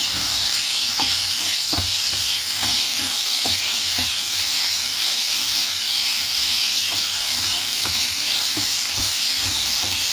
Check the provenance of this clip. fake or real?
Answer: fake